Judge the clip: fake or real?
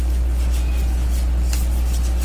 real